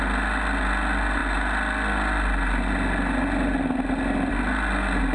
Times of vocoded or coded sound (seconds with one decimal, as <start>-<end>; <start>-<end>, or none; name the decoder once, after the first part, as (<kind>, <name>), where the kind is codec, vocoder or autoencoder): none